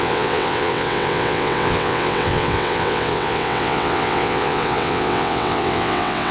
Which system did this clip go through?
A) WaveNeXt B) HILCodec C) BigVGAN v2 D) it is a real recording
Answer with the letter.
A